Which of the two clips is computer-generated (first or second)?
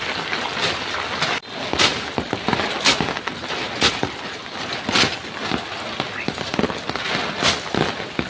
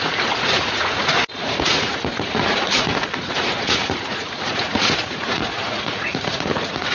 second